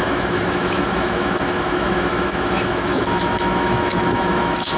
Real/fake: fake